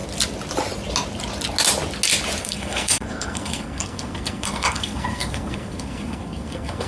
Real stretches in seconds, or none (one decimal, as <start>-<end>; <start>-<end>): 0.0-2.4